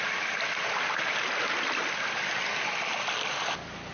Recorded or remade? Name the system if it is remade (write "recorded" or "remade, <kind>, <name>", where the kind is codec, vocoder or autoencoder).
recorded